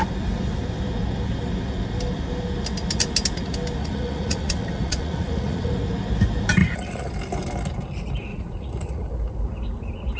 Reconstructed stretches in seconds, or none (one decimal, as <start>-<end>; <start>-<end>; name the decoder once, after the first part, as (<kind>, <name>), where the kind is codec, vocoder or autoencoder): 3.8-5.7 (vocoder, Vocos); 6.6-7.1; 8.3-9.1